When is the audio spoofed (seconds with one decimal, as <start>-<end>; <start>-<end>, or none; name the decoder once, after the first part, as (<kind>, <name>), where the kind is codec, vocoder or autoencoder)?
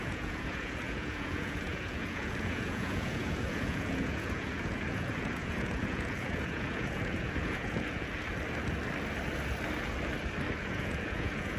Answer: 0.0-8.1 (vocoder, Vocos); 10.6-11.6